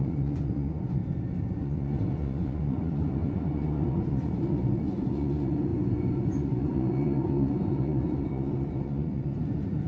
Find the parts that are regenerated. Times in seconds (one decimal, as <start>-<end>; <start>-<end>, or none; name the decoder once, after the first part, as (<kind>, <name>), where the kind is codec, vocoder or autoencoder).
0.0-1.0 (vocoder, Vocos); 1.6-5.7; 6.2-9.9